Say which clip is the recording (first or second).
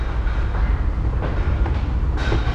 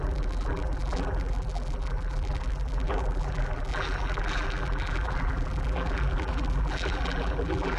first